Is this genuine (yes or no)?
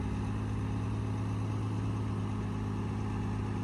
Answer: yes